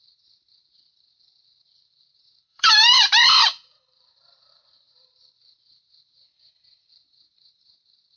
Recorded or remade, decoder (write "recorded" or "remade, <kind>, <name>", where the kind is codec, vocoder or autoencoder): remade, vocoder, BigVGAN v2